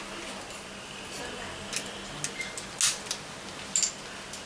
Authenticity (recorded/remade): recorded